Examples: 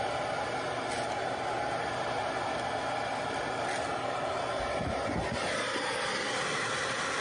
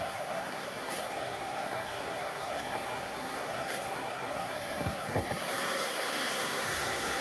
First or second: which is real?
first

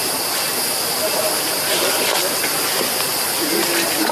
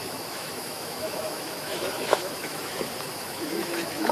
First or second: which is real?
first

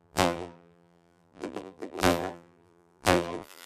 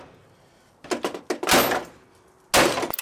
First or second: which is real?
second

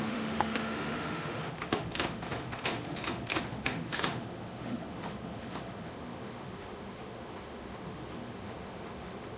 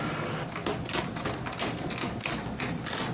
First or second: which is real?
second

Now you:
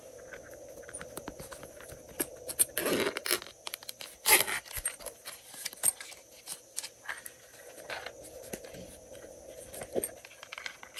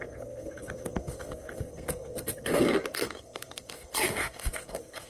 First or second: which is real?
first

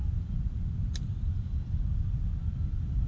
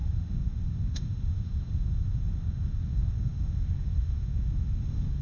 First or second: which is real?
first